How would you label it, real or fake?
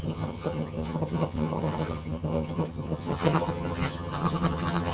fake